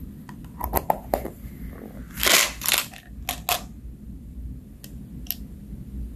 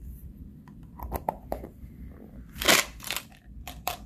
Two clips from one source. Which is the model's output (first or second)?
second